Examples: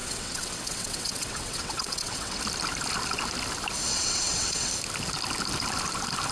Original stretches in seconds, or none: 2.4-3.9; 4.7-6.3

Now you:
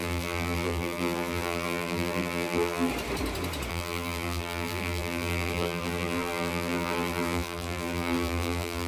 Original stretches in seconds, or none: 2.9-3.7

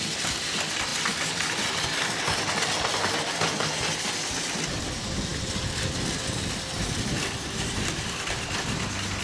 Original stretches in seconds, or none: 0.0-9.2

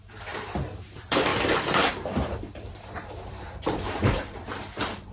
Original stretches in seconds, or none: 1.3-1.9

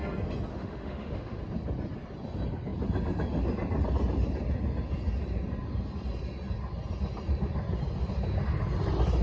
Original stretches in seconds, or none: 0.0-0.5; 1.4-9.2

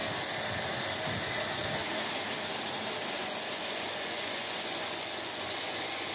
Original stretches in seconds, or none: 0.0-3.1

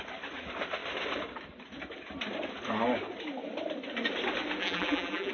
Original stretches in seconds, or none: 0.0-4.6

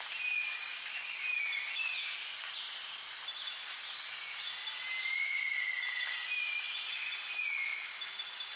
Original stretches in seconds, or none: 0.0-8.6